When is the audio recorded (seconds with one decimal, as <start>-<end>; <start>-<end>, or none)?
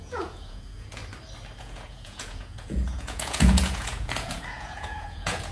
1.0-1.6